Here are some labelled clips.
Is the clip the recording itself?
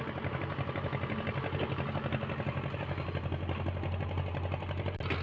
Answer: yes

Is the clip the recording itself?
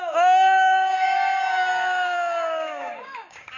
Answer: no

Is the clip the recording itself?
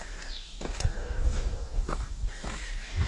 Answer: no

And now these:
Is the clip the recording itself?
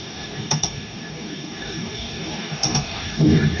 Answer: no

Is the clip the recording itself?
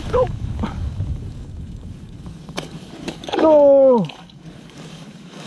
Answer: no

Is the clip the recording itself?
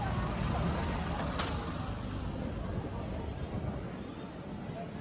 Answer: yes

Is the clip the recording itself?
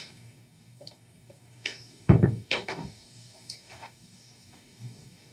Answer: no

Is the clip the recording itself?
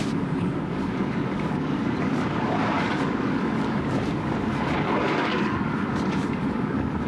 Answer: no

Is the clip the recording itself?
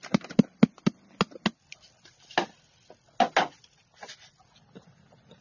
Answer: yes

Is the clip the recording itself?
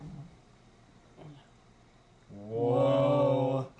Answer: yes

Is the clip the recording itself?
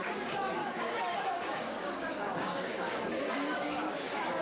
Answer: no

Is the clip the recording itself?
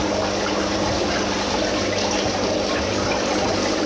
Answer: yes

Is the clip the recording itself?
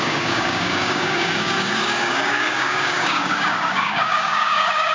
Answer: no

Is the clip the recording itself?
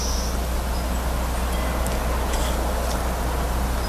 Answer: yes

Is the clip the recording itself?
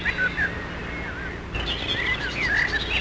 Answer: yes